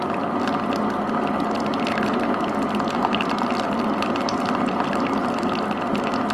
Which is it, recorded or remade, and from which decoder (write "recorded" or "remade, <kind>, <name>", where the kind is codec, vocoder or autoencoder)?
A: recorded